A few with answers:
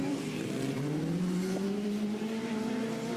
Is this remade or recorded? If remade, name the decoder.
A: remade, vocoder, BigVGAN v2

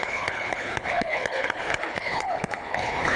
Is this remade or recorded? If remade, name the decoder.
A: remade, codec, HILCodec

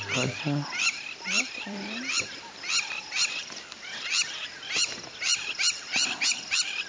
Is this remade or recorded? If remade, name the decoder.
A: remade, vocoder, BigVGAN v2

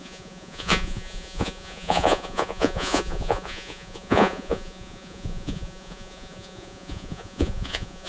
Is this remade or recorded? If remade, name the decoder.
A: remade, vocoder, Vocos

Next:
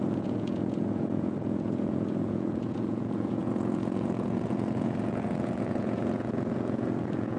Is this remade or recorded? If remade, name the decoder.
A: remade, vocoder, Vocos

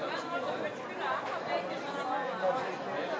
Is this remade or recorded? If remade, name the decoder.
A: recorded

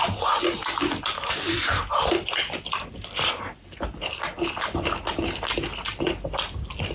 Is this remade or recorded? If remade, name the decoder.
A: remade, vocoder, BigVGAN v2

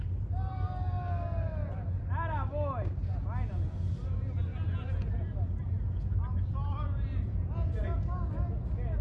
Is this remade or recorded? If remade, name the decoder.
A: recorded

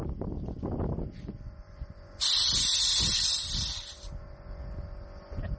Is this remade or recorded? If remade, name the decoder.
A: recorded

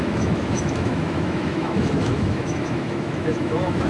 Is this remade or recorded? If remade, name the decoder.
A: remade, autoencoder, DAC-VAE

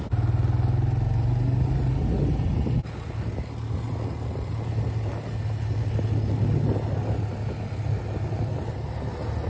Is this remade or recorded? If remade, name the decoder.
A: recorded